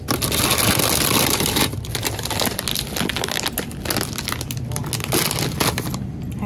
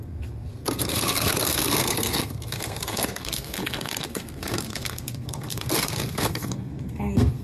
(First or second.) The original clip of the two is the first